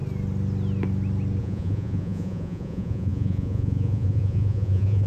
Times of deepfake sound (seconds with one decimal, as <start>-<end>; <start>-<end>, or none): 1.4-5.1